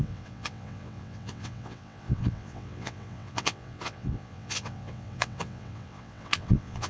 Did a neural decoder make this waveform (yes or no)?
yes